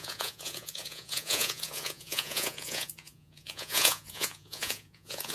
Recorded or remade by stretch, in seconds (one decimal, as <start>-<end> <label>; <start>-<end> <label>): 0.0-5.3 remade